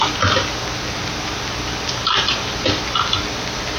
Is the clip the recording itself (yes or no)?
yes